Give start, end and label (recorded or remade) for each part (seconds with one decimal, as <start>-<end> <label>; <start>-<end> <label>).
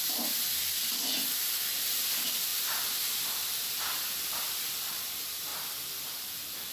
0.0-5.5 remade; 5.5-6.0 recorded; 6.0-6.7 remade